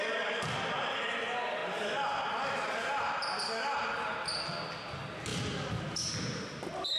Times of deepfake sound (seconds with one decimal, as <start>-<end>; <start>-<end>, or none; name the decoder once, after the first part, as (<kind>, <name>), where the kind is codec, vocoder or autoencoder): none